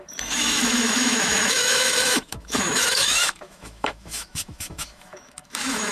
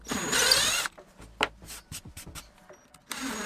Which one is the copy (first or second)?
first